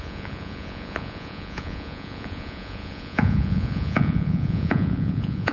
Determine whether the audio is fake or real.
fake